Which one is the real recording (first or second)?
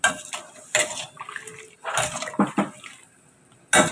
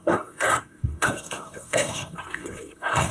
first